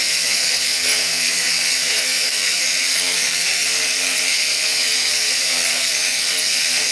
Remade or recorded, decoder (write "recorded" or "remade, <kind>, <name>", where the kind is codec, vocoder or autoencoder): remade, codec, SNAC